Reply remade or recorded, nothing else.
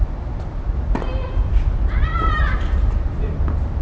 remade